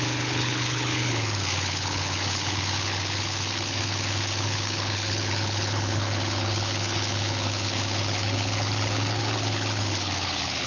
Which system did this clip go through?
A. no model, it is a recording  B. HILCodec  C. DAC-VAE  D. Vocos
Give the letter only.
B